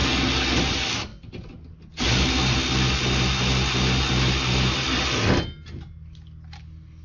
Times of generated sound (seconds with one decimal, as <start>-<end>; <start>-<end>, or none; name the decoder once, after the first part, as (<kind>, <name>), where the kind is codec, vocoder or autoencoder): none